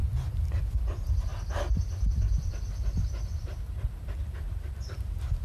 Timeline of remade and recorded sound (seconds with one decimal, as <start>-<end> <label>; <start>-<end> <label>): 0.0-0.6 remade; 0.6-5.4 recorded